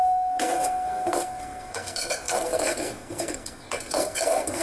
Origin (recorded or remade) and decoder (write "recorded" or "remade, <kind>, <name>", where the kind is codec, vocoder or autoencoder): remade, codec, SNAC